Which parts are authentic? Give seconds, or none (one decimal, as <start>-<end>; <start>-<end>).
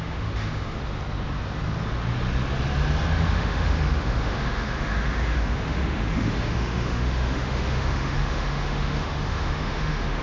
0.8-3.1